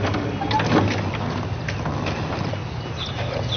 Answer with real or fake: real